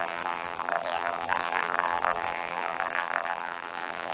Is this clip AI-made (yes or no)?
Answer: yes